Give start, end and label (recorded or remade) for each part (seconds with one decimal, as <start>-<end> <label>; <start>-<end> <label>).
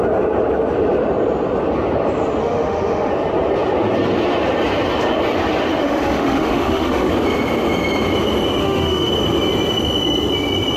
0.0-2.4 recorded; 2.4-3.1 remade; 3.1-5.8 recorded; 5.8-7.1 remade; 7.1-8.6 recorded; 8.6-9.1 remade; 9.1-10.8 recorded